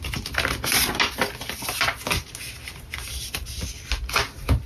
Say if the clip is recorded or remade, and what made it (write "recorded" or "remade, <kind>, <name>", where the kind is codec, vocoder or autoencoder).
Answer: recorded